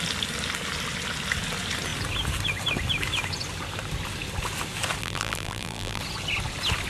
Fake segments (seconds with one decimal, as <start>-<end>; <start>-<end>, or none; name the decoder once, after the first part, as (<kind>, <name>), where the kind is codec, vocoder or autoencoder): 5.0-6.0 (vocoder, BigVGAN v2)